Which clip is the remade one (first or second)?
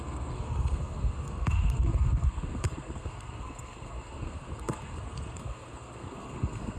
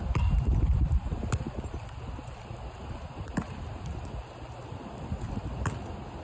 first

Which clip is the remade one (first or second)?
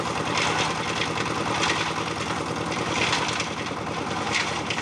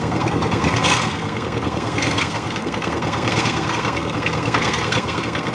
second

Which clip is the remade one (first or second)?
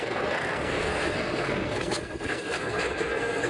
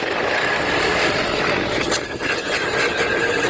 first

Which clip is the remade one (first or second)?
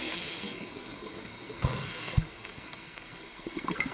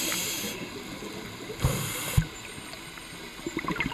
first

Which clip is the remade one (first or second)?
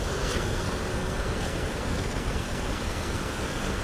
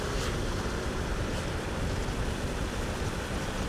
first